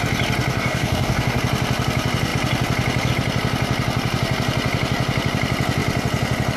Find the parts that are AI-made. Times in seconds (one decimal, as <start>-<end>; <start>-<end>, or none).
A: 0.5-1.4